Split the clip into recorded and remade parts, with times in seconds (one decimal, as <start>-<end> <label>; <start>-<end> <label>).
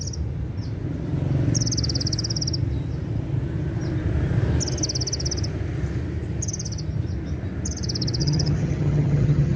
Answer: 0.0-8.2 recorded; 8.2-9.6 remade